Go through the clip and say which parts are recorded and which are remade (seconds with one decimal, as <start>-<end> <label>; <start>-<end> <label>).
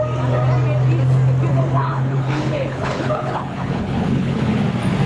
0.0-1.5 recorded; 1.5-4.6 remade; 4.6-5.1 recorded